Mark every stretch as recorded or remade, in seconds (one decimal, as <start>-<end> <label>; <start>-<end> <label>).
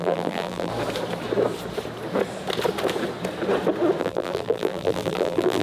0.0-0.7 remade; 0.7-4.0 recorded; 4.0-5.6 remade